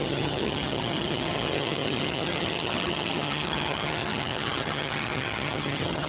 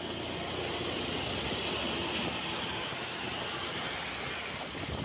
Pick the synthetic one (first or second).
first